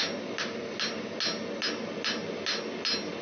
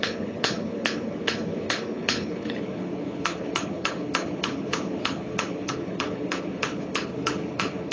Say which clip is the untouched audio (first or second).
first